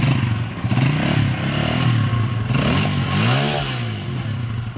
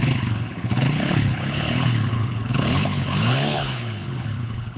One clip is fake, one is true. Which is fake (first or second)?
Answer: second